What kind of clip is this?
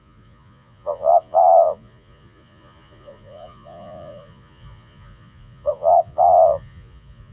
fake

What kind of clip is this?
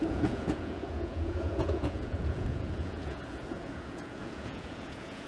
fake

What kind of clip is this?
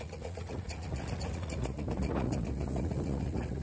fake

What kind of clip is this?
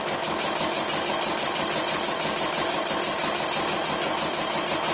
real